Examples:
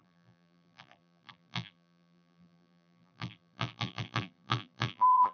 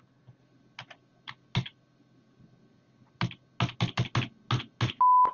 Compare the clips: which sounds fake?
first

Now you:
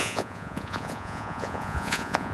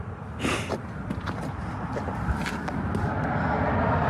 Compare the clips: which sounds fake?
first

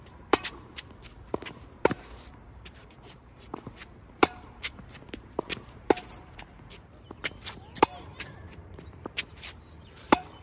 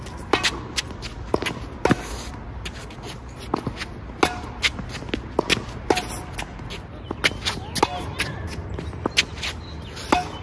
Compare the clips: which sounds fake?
first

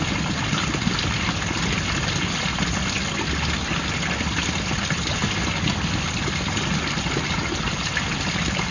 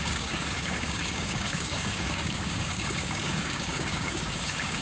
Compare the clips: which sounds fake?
second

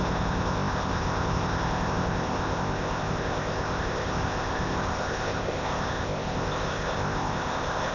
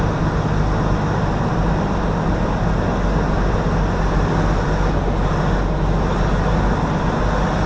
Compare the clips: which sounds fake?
first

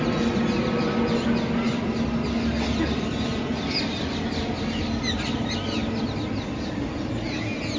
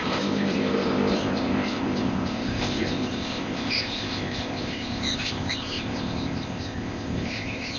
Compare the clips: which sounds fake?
second